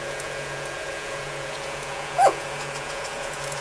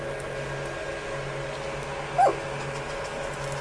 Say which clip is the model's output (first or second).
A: first